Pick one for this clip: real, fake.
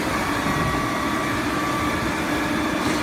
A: real